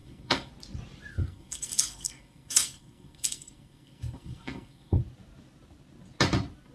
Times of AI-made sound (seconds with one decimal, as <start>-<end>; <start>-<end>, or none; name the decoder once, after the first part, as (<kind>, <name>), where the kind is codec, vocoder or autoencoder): 0.0-0.5 (codec, SNAC); 1.1-5.0